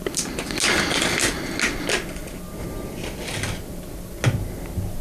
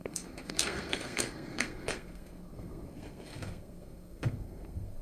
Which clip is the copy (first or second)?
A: second